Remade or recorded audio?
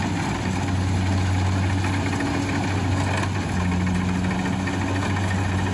recorded